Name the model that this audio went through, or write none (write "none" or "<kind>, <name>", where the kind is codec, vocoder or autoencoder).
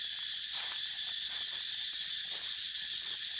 none